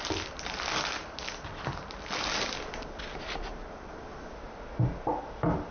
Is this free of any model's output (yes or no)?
yes